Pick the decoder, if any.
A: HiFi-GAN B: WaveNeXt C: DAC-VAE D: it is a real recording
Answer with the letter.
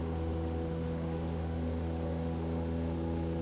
C